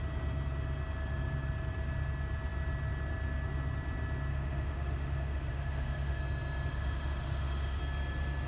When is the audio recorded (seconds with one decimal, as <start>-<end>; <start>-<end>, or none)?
0.0-4.3; 6.2-6.7; 7.8-8.5